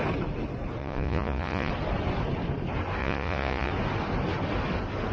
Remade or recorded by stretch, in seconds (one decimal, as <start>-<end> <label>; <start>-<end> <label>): 0.0-0.8 recorded; 0.8-1.7 remade; 1.7-3.0 recorded; 3.0-3.7 remade; 3.7-5.1 recorded

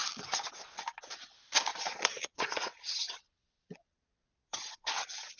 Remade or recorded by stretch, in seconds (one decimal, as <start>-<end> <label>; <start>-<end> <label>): 0.0-1.7 recorded; 1.7-4.9 remade; 4.9-5.4 recorded

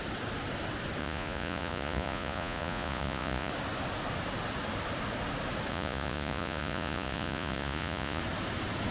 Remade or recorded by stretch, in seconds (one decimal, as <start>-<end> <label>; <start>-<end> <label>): 0.0-1.0 recorded; 1.0-3.5 remade; 3.5-5.7 recorded; 5.7-8.2 remade; 8.2-8.9 recorded

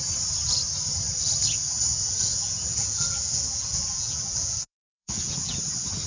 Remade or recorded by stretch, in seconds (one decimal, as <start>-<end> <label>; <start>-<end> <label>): 0.0-1.9 recorded; 1.9-5.6 remade; 5.6-6.1 recorded

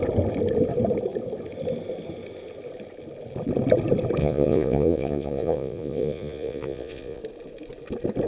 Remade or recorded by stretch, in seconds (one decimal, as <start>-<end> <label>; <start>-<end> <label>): 0.0-4.2 recorded; 4.2-7.2 remade; 7.2-8.3 recorded

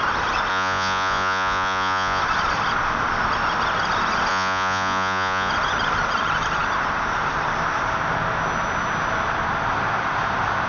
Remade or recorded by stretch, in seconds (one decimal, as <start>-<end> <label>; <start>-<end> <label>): 0.0-0.5 recorded; 0.5-2.2 remade; 2.2-4.3 recorded; 4.3-5.5 remade; 5.5-10.7 recorded